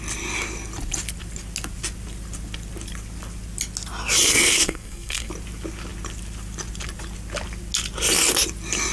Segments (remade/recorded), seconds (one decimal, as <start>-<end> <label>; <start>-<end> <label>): 0.0-4.3 recorded; 4.3-5.3 remade; 5.3-8.9 recorded